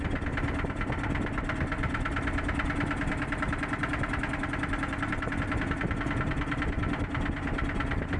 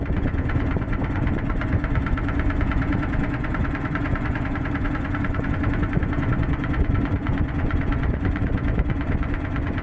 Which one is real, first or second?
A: first